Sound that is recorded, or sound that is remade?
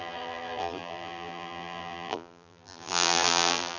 remade